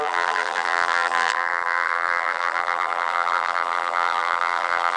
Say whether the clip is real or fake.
fake